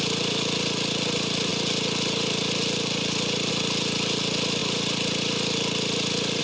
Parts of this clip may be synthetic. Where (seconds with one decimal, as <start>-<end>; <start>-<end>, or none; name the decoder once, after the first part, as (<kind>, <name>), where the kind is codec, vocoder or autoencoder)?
none